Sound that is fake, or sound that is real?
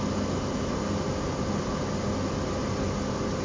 real